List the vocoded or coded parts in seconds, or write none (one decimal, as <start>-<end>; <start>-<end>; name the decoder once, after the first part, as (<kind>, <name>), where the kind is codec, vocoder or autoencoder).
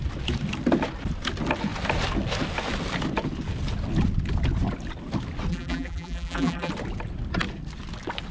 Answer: 5.5-6.7 (vocoder, BigVGAN v2)